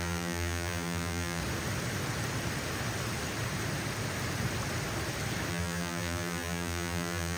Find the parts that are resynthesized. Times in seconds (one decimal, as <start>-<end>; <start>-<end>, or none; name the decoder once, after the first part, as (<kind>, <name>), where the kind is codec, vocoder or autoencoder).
0.0-1.4 (vocoder, BigVGAN v2); 5.5-7.4